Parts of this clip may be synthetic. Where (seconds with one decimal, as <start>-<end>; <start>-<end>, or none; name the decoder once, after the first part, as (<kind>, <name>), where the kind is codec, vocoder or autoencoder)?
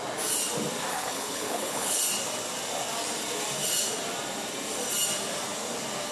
0.9-2.0 (codec, HILCodec)